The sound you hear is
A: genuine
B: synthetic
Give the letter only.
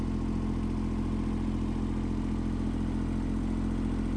A